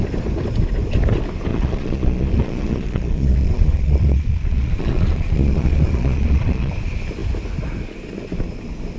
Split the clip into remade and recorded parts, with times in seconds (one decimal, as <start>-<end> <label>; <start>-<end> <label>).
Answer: 0.0-1.5 recorded; 1.5-6.7 remade; 6.7-9.0 recorded